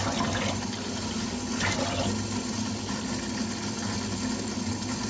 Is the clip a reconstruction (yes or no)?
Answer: no